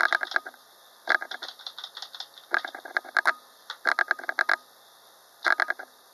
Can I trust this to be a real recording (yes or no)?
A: yes